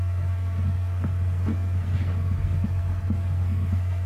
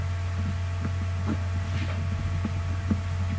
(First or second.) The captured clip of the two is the second